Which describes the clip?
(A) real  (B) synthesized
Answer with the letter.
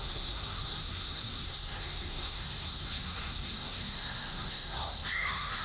B